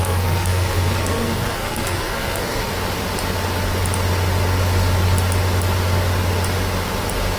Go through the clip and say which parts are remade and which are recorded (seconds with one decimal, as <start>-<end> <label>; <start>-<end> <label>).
0.0-2.7 remade; 2.7-7.4 recorded